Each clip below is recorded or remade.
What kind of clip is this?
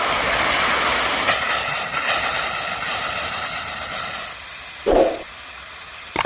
recorded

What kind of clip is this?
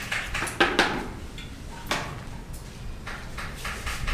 recorded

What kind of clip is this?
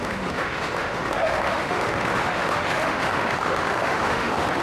remade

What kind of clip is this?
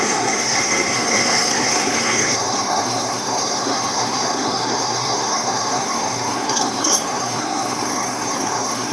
remade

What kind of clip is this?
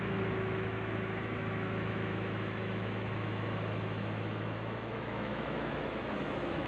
remade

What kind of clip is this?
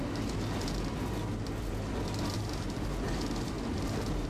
recorded